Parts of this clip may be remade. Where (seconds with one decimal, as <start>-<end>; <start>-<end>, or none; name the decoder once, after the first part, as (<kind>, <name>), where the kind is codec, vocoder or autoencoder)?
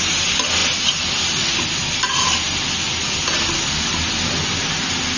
none